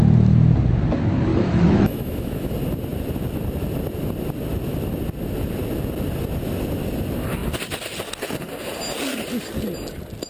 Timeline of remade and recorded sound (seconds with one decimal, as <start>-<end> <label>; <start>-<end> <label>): 0.0-1.3 recorded; 1.3-2.5 remade; 2.5-10.3 recorded